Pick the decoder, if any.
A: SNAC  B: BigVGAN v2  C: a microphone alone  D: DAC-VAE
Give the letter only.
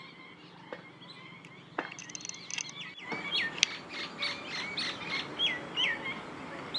C